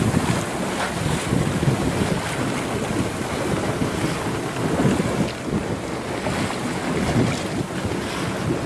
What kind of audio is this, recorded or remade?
recorded